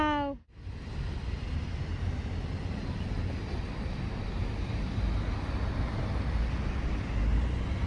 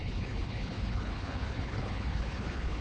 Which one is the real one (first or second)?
first